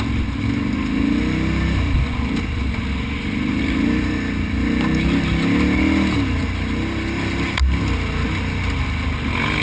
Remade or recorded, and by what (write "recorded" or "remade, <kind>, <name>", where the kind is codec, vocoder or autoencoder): recorded